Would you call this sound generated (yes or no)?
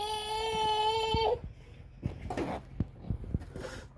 no